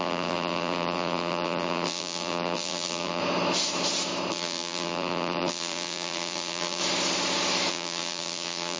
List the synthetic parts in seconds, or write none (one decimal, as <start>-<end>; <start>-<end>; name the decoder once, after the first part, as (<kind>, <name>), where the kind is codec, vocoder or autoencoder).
0.0-3.2 (vocoder, BigVGAN v2); 4.3-6.8; 7.7-8.8